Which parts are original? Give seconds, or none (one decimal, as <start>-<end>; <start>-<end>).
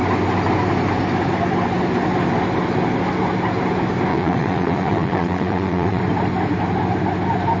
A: 0.0-4.1; 6.0-7.6